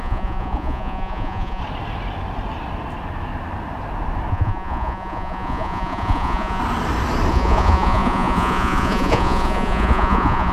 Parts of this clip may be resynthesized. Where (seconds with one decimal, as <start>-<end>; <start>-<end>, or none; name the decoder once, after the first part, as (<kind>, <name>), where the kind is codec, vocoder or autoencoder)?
0.0-1.6 (vocoder, Vocos); 4.3-6.6; 7.3-10.5